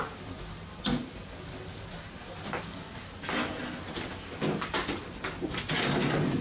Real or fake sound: real